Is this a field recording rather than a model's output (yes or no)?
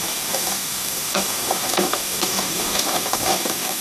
no